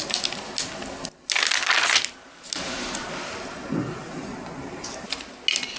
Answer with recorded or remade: recorded